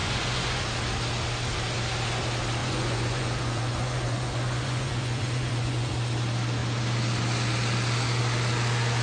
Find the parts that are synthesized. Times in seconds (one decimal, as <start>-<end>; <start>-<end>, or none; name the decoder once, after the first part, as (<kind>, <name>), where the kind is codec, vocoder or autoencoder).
0.0-0.6 (vocoder, Vocos); 2.6-5.9